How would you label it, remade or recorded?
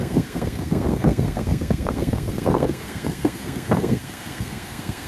remade